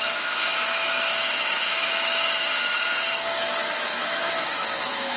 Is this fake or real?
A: fake